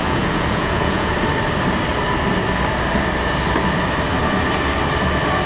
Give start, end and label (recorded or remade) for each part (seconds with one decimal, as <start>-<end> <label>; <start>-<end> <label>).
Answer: 0.0-1.1 remade; 1.1-5.5 recorded